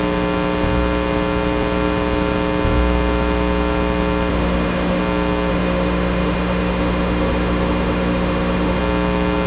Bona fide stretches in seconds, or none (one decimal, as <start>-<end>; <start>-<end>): 0.0-4.3; 5.0-5.5; 8.8-9.5